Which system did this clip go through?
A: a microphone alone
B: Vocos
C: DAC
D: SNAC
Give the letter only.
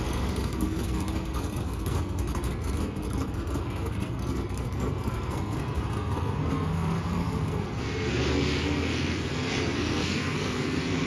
D